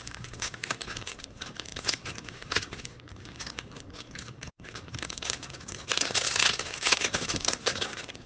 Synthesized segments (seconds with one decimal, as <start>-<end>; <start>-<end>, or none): 0.0-8.3